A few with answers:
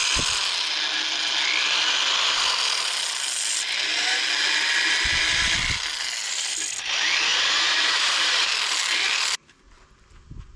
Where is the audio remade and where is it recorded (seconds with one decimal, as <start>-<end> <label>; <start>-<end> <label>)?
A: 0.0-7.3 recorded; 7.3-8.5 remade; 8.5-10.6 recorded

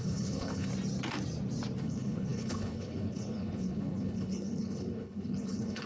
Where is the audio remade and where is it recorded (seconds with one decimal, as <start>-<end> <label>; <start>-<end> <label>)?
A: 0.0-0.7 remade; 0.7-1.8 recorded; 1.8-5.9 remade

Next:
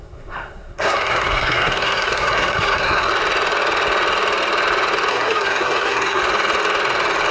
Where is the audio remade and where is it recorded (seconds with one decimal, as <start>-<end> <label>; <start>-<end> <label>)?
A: 0.0-3.1 remade; 3.1-5.1 recorded; 5.1-6.2 remade; 6.2-7.3 recorded

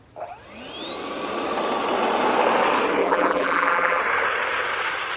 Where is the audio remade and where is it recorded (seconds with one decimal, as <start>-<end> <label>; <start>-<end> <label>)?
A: 0.0-3.0 recorded; 3.0-4.0 remade; 4.0-5.2 recorded

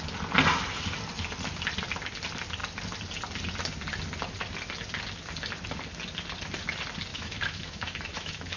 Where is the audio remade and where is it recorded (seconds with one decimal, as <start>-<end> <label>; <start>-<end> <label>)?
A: 0.0-7.1 recorded; 7.1-8.6 remade

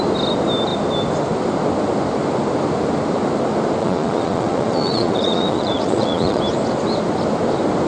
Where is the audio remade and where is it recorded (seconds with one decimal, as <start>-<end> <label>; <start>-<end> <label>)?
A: 0.0-3.8 recorded; 3.8-6.4 remade; 6.4-7.9 recorded

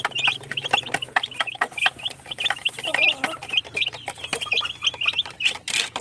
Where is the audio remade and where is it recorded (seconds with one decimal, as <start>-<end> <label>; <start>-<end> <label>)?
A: 0.0-6.0 recorded

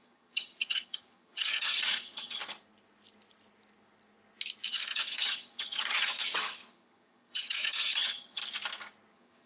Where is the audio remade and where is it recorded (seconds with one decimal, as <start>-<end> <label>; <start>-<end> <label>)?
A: 0.0-2.4 remade; 2.4-4.7 recorded; 4.7-8.4 remade; 8.4-9.1 recorded; 9.1-9.5 remade